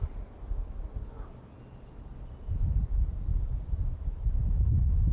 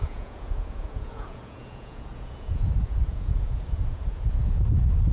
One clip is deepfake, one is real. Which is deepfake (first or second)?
second